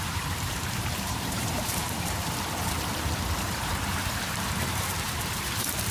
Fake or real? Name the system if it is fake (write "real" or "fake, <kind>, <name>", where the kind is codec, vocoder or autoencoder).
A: fake, vocoder, BigVGAN v2